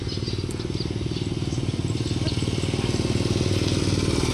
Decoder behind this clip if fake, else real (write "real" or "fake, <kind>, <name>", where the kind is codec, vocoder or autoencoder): real